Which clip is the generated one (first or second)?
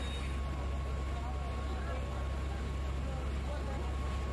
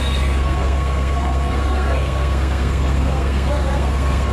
second